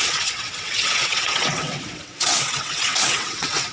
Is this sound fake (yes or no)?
yes